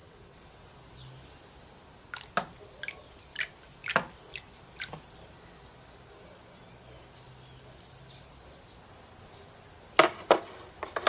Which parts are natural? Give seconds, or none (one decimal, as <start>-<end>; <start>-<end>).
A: 0.7-11.1